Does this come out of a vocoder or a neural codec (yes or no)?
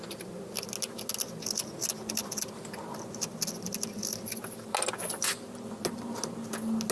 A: no